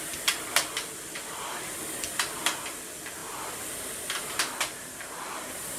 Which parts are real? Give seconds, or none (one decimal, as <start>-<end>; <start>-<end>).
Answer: 0.0-5.8